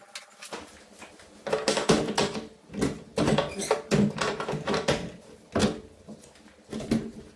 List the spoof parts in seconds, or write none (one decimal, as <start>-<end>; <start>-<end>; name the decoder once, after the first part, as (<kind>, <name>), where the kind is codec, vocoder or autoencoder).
none